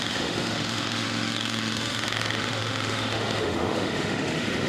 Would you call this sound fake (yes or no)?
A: yes